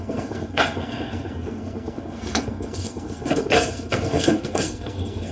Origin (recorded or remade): remade